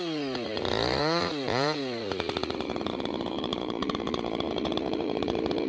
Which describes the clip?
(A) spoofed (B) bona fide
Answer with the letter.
A